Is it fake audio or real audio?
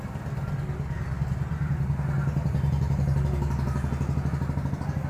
real